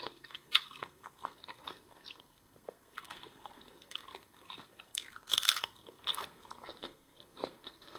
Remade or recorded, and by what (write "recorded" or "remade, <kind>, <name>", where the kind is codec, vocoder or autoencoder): remade, codec, SNAC